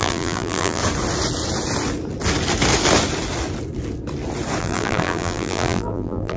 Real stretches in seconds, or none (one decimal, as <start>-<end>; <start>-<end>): 0.8-4.6